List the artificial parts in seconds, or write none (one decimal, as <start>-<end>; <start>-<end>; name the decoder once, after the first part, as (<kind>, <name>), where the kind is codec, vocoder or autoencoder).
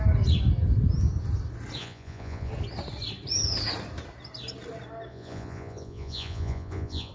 1.8-2.5 (vocoder, Vocos); 5.1-7.1